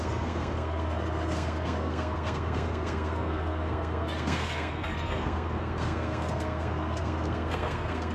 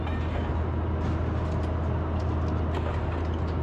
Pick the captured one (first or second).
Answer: second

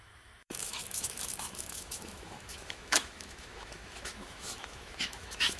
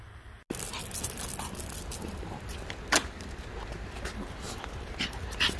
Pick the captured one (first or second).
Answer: second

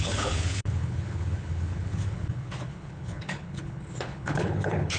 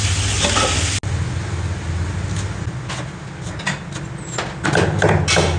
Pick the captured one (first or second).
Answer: second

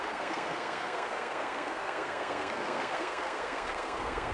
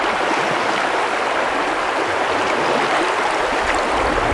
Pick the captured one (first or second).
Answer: second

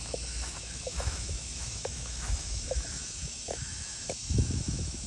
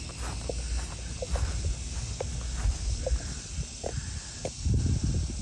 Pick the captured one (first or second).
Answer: second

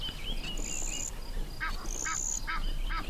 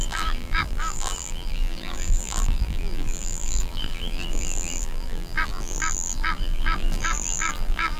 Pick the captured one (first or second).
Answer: first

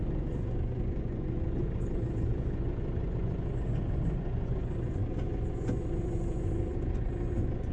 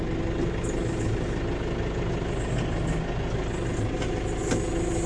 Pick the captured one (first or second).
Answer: second